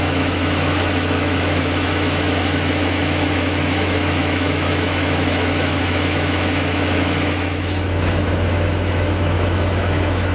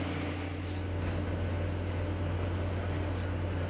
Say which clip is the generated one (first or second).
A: first